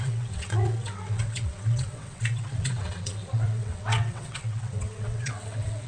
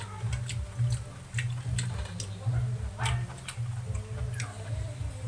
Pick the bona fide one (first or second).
second